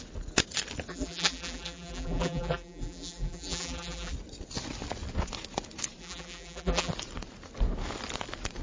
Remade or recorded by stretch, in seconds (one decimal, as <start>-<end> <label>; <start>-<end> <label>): 0.0-0.9 recorded; 0.9-4.1 remade; 4.1-6.0 recorded; 6.0-6.9 remade; 6.9-8.6 recorded